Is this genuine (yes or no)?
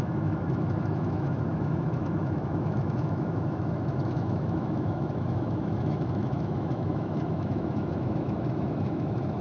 no